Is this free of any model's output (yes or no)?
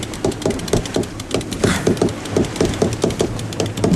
yes